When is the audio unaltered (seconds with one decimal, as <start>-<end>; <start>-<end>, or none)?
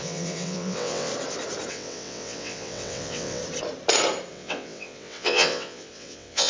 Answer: 1.1-1.7; 3.4-4.3